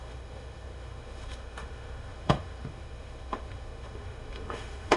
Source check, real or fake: fake